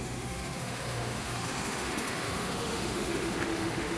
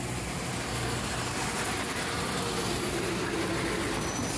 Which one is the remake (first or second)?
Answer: first